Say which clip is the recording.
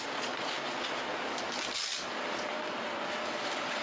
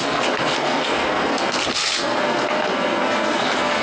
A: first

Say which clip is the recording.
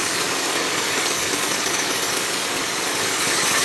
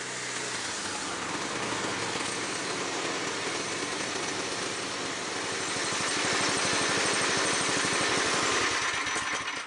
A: second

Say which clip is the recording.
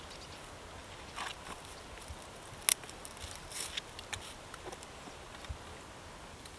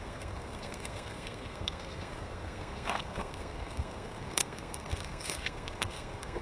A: first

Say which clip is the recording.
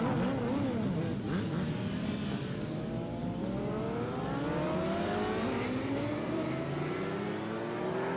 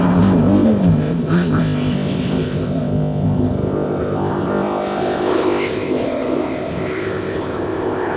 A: first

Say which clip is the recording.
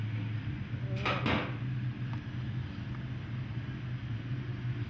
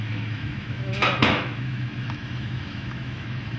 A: first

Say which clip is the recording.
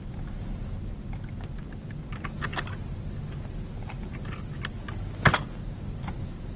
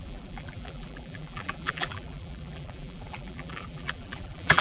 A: first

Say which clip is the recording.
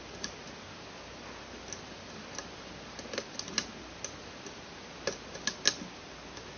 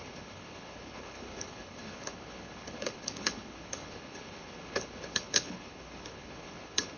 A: first